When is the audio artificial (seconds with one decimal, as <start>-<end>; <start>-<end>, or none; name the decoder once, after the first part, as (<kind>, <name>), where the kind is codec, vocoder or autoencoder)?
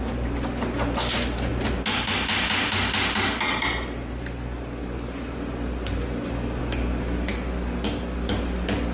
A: none